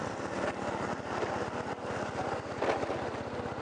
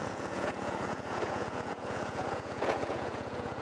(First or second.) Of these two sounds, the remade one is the second